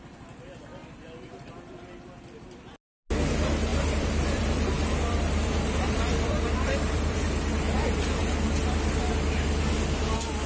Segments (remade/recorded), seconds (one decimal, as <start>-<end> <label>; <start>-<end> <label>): 0.0-3.7 recorded; 3.7-7.2 remade; 7.2-10.5 recorded